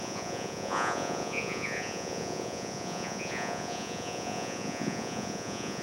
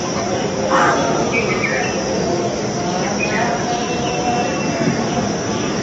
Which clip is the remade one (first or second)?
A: first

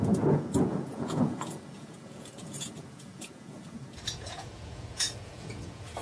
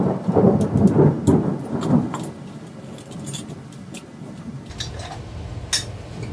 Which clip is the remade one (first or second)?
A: first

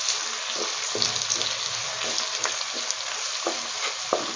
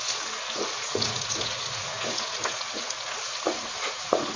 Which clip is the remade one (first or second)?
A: second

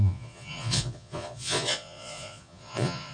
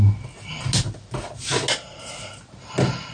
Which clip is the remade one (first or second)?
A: first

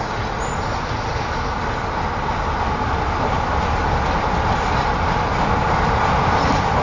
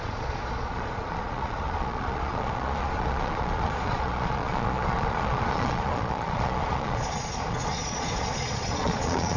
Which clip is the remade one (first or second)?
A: second